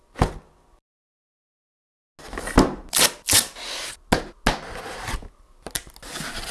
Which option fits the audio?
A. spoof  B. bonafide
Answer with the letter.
B